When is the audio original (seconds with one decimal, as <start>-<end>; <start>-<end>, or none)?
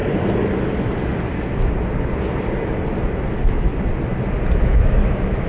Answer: 0.0-3.3; 3.7-4.6